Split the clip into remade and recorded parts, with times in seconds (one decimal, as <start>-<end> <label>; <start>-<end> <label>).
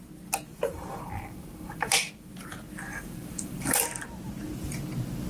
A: 0.0-0.5 recorded; 0.5-2.1 remade; 2.1-2.9 recorded; 2.9-3.8 remade; 3.8-5.3 recorded